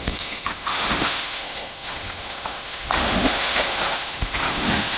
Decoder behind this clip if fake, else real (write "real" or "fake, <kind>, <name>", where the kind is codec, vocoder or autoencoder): fake, autoencoder, DAC-VAE